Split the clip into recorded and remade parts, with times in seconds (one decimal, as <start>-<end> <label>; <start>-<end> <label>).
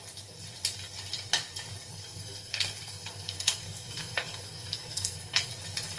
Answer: 0.0-1.9 recorded; 1.9-5.5 remade; 5.5-6.0 recorded